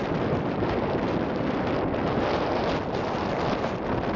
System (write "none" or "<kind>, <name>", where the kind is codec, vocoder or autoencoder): none